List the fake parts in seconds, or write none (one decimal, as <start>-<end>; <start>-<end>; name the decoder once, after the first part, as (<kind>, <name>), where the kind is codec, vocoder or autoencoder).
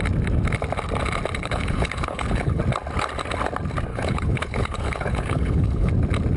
1.4-2.6 (codec, HILCodec); 3.9-5.9